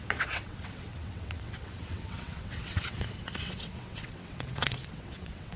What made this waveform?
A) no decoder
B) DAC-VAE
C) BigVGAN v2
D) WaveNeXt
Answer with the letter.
D